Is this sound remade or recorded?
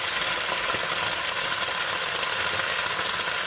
recorded